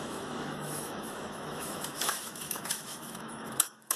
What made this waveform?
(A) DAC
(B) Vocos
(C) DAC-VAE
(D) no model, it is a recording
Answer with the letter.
C